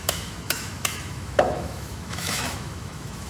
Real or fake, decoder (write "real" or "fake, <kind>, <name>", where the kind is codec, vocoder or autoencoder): fake, autoencoder, DAC-VAE